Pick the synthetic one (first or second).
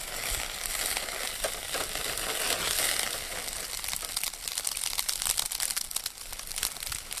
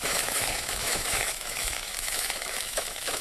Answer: second